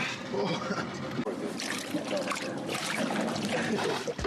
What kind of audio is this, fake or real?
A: real